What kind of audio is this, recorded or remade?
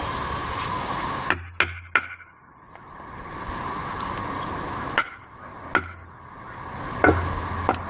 recorded